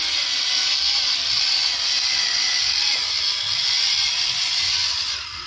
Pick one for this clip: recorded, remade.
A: recorded